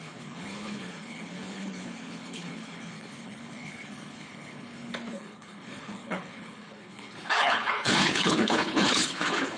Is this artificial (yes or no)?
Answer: yes